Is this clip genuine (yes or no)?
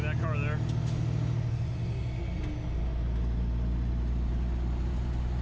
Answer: yes